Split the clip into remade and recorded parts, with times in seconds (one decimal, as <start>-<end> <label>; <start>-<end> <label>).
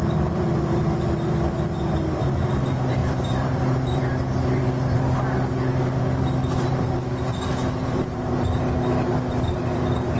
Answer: 0.0-3.0 recorded; 3.0-4.0 remade; 4.0-7.8 recorded; 7.8-8.6 remade; 8.6-10.2 recorded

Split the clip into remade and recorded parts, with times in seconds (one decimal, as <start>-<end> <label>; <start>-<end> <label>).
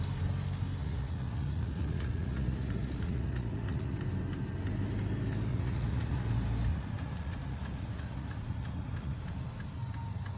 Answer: 0.0-0.8 recorded; 0.8-4.0 remade; 4.0-5.5 recorded; 5.5-6.3 remade; 6.3-6.7 recorded; 6.7-9.2 remade; 9.2-10.4 recorded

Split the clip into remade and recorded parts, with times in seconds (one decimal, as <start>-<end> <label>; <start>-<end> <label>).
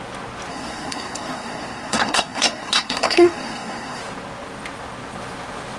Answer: 0.0-0.5 recorded; 0.5-4.0 remade; 4.0-5.8 recorded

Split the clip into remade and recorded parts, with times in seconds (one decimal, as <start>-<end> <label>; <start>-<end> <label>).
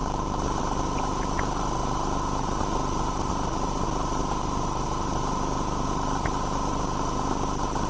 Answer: 0.0-7.9 recorded